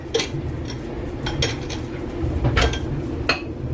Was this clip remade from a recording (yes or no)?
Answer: no